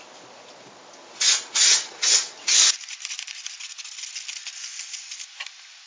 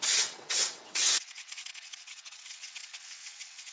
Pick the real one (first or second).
first